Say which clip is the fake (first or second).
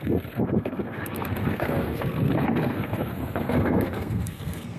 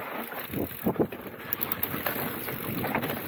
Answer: first